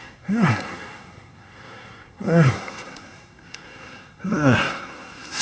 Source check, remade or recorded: remade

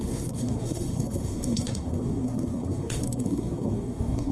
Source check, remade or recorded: remade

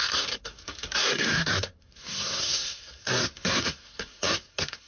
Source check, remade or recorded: remade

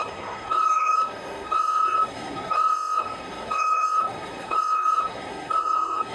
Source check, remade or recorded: remade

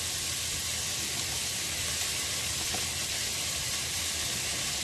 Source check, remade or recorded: recorded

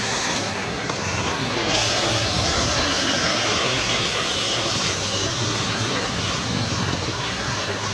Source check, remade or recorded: remade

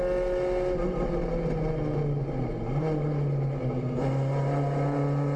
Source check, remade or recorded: recorded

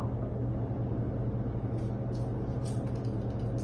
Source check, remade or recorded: recorded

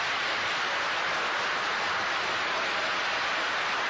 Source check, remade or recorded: recorded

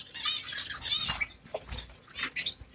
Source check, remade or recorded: recorded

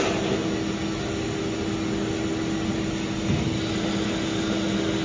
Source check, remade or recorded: recorded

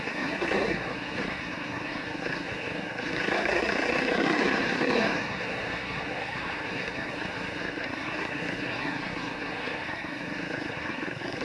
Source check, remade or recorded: remade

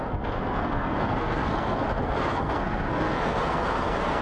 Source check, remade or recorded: remade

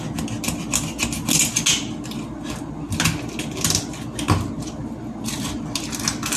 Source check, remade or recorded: recorded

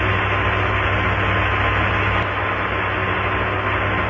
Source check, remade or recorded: recorded